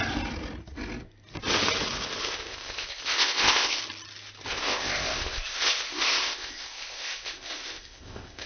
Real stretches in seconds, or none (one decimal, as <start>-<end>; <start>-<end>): 0.0-2.2; 3.8-4.5